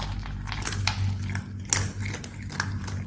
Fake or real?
real